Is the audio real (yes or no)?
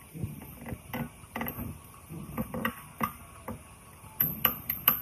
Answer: yes